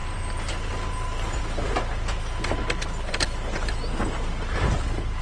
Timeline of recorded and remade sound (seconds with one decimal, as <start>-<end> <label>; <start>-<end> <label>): 0.0-5.2 recorded